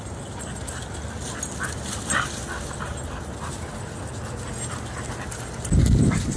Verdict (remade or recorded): recorded